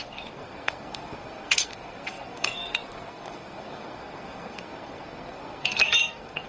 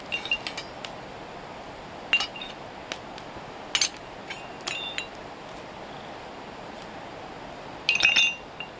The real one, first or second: second